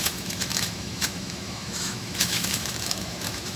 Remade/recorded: remade